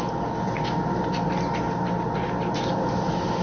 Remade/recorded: recorded